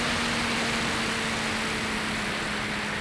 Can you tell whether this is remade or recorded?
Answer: recorded